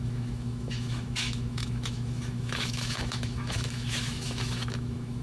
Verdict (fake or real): fake